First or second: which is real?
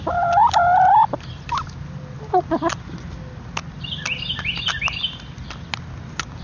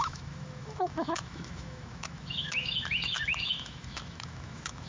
first